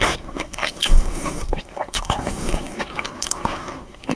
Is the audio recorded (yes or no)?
no